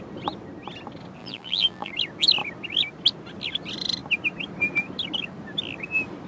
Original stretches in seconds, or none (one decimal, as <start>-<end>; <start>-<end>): 0.0-1.2; 1.9-6.3